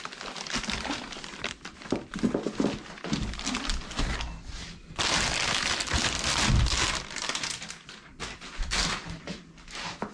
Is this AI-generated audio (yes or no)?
no